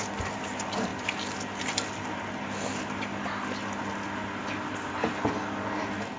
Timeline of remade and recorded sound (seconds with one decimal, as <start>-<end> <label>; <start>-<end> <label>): 0.0-6.2 recorded

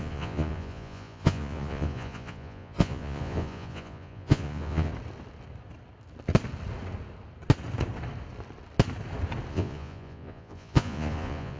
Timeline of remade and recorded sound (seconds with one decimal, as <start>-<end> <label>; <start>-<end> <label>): 0.0-4.9 remade; 4.9-9.5 recorded; 9.5-11.6 remade

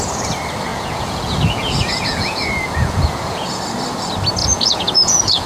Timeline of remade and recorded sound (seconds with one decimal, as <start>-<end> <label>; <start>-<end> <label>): 0.0-0.7 recorded; 0.7-3.6 remade; 3.6-4.4 recorded; 4.4-5.5 remade

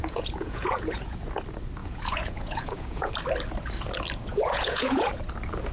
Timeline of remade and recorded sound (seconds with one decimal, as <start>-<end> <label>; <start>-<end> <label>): 0.0-1.2 remade; 1.2-1.8 recorded; 1.8-3.1 remade; 3.1-4.3 recorded; 4.3-5.2 remade; 5.2-5.7 recorded

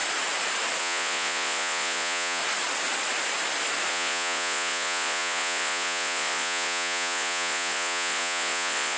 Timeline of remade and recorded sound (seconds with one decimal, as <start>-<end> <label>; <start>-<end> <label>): 0.0-0.8 recorded; 0.8-2.4 remade; 2.4-3.9 recorded; 3.9-9.0 remade

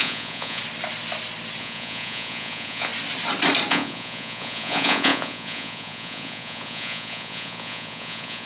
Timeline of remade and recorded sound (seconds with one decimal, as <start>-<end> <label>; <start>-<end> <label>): 0.0-0.6 remade; 0.6-1.6 recorded; 1.6-2.9 remade; 2.9-3.7 recorded; 3.7-8.5 remade